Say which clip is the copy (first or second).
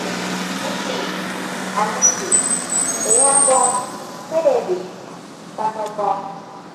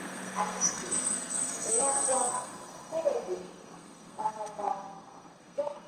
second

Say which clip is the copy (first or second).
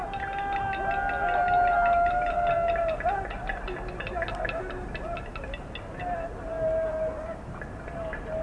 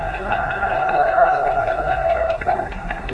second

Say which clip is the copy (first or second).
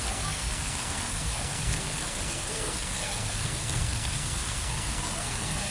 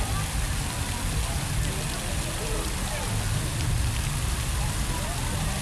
first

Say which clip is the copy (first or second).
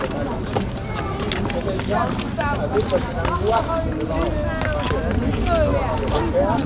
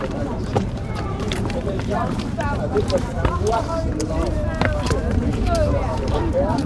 second